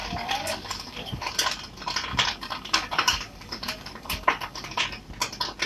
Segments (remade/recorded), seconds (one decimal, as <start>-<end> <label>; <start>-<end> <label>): 0.0-1.3 remade; 1.3-2.1 recorded; 2.1-4.8 remade; 4.8-5.7 recorded